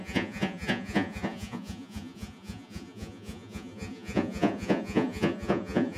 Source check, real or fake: fake